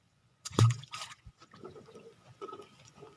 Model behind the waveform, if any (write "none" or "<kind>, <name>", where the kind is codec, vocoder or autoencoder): vocoder, Vocos